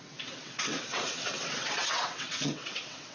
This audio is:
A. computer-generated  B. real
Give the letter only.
A